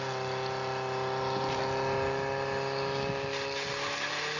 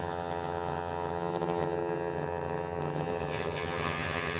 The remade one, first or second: second